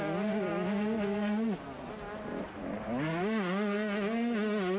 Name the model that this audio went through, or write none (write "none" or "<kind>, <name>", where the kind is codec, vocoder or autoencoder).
none